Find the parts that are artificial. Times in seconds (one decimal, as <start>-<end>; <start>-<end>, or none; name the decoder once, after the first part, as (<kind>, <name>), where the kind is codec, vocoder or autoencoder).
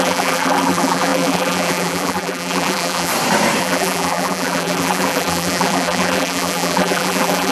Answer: 0.0-3.1 (vocoder, BigVGAN v2); 3.6-7.5